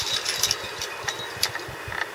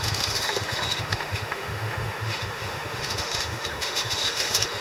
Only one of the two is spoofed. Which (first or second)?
second